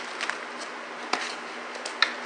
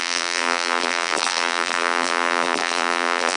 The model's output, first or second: second